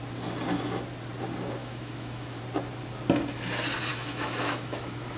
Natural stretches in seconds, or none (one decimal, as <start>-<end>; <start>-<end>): 0.0-1.6; 2.4-3.9